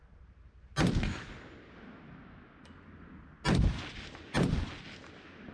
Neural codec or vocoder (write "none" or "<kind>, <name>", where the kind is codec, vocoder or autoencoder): none